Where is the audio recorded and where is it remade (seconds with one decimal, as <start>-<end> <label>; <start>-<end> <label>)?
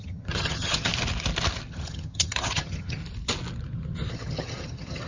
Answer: 0.0-0.9 remade; 0.9-1.7 recorded; 1.7-3.0 remade; 3.0-4.1 recorded; 4.1-5.1 remade